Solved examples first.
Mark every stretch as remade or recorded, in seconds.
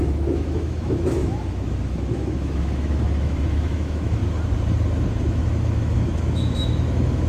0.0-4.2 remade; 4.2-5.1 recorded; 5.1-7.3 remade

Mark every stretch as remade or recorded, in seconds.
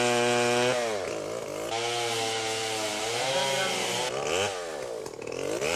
0.0-5.8 recorded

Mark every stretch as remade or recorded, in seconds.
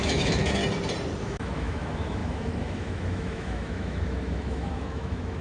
0.0-0.6 remade; 0.6-1.2 recorded; 1.2-5.4 remade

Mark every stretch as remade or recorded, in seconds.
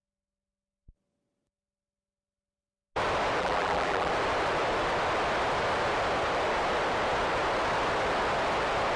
0.0-3.4 recorded; 3.4-4.1 remade; 4.1-9.0 recorded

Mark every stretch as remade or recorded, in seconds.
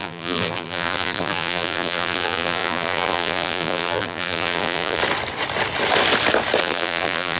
0.0-5.0 remade; 5.0-6.6 recorded; 6.6-7.4 remade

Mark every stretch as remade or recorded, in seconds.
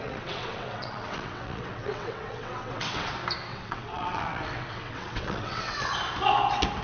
0.0-3.1 remade; 3.1-3.5 recorded; 3.5-5.8 remade; 5.8-6.8 recorded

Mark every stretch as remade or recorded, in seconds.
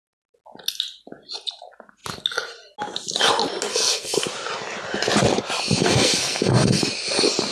0.0-3.7 recorded; 3.7-4.2 remade; 4.2-5.8 recorded; 5.8-6.8 remade; 6.8-7.5 recorded